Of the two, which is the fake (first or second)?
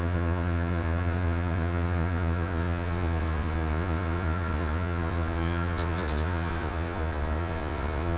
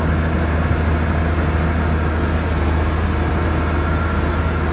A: first